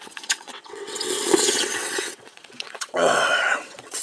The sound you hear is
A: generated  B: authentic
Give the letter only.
A